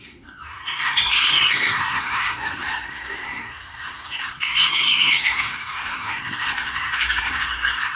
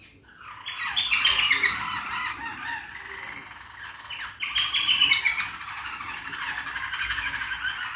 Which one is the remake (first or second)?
first